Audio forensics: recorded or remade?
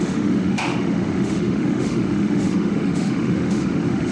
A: remade